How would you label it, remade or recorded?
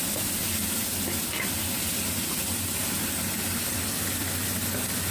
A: recorded